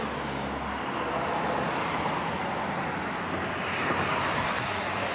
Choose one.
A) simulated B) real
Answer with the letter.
B